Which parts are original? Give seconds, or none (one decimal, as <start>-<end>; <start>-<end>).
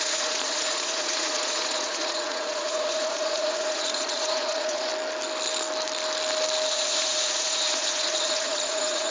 4.9-6.7